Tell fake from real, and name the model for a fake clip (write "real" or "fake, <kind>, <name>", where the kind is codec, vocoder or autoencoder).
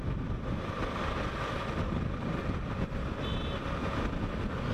real